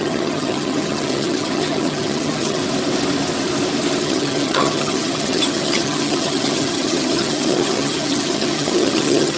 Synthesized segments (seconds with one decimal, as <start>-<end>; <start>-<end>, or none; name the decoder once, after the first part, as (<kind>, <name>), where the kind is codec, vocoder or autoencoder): 0.0-2.6 (vocoder, HiFi-GAN); 4.0-9.4